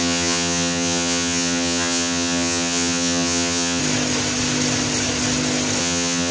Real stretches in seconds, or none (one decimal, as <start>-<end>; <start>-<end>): 3.8-5.8